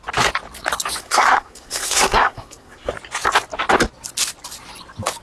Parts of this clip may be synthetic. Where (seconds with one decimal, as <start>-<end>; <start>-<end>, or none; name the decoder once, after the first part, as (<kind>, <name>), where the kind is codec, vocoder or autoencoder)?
1.0-2.9 (codec, SNAC)

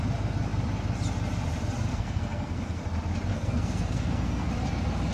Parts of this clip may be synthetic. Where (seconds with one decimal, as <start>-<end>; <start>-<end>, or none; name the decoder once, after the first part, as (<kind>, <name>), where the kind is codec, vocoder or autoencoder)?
1.9-2.8 (codec, SNAC); 3.3-4.5

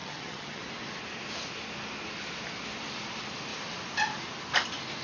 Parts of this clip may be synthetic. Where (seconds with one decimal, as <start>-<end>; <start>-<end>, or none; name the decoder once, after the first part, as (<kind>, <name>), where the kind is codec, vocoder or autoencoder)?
0.0-0.6 (vocoder, HiFi-GAN)

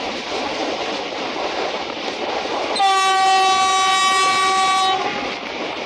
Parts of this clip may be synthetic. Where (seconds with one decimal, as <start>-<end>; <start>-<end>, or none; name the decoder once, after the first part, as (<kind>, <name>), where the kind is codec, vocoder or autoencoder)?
none